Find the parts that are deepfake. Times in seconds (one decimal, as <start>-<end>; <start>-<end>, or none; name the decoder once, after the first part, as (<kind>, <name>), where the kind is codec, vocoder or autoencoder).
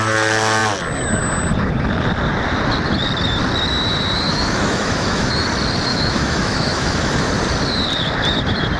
4.3-5.3 (autoencoder, DAC-VAE); 5.9-7.3